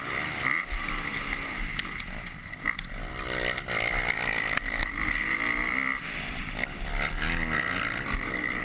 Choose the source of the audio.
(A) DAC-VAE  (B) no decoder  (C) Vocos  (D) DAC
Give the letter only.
B